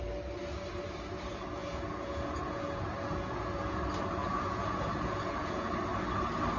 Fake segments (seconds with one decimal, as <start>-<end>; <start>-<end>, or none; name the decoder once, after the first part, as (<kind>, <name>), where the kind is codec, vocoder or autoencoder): 1.6-3.8 (vocoder, Vocos); 4.2-5.7

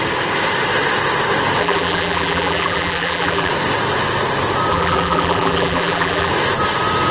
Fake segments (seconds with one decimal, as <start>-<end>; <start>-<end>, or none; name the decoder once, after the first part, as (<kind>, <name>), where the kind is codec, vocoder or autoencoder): 1.6-3.5 (vocoder, BigVGAN v2); 4.7-6.3